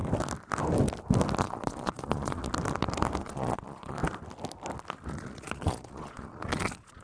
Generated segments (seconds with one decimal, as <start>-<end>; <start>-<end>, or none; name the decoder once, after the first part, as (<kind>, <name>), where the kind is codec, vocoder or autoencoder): 1.4-2.4 (vocoder, Vocos); 3.2-4.0; 5.1-7.0